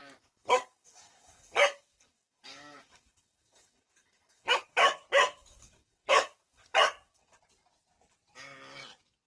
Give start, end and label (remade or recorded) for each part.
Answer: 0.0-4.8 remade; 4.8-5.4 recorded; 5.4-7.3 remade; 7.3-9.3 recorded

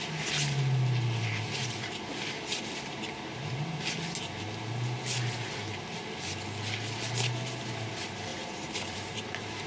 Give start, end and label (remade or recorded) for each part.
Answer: 0.0-8.3 recorded; 8.3-9.7 remade

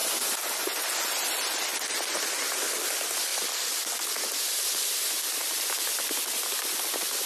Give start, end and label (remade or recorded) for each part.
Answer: 0.0-7.3 recorded

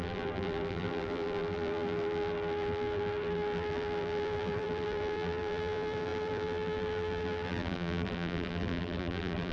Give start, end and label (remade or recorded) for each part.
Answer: 0.0-9.5 remade

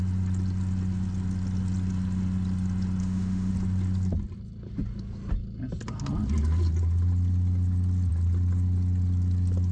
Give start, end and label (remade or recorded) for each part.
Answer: 0.0-3.0 recorded; 3.0-3.5 remade; 3.5-9.7 recorded

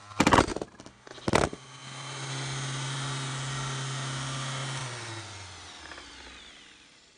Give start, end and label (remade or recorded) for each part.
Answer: 0.0-0.5 recorded; 0.5-1.1 remade; 1.1-7.2 recorded

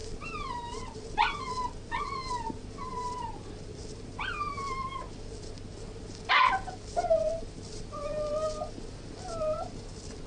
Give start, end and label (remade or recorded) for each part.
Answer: 0.0-10.3 recorded

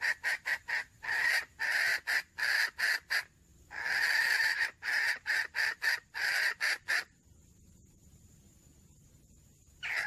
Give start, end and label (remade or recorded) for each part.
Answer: 0.0-10.1 recorded